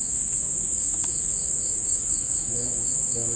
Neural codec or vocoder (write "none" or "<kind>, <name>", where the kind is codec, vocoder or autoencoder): autoencoder, DAC-VAE